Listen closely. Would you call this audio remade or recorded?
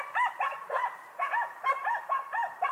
remade